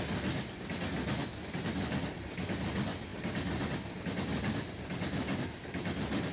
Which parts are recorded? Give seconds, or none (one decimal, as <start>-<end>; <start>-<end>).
0.0-6.3